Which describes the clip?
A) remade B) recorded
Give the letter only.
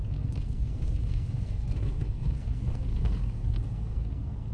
A